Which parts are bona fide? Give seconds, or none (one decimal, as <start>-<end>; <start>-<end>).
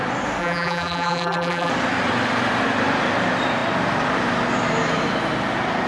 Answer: 0.0-0.4; 1.7-5.9